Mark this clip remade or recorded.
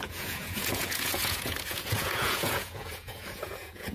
remade